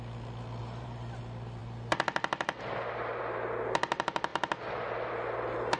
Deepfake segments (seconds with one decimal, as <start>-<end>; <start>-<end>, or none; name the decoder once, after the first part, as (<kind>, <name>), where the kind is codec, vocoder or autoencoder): 0.6-1.2 (vocoder, BigVGAN v2)